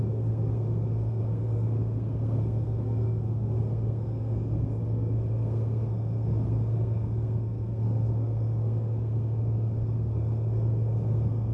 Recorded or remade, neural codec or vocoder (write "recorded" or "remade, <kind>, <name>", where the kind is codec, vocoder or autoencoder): remade, codec, SNAC